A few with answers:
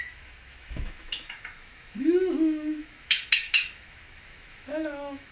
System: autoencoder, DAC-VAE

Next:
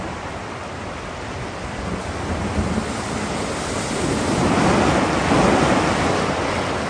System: none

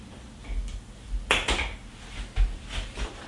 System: none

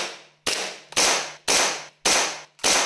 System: none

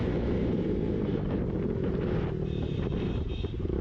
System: vocoder, BigVGAN v2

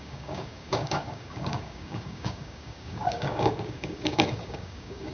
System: codec, DAC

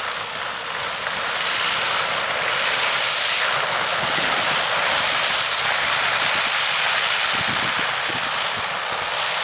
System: none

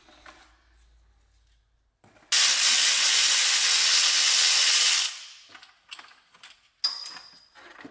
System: none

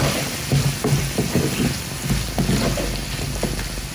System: none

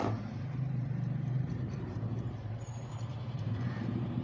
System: vocoder, BigVGAN v2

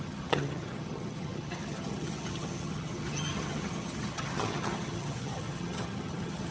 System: vocoder, HiFi-GAN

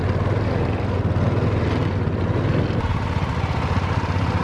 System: none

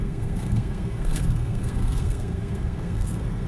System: codec, SNAC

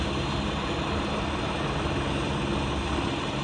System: none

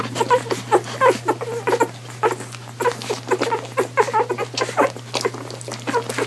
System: none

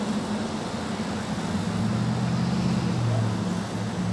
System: none